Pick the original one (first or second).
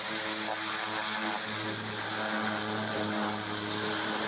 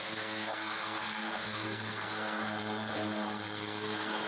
first